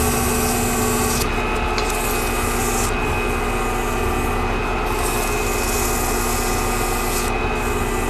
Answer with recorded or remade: recorded